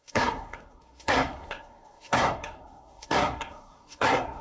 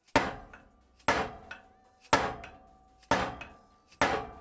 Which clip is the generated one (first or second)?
first